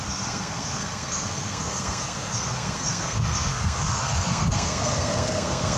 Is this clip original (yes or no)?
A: no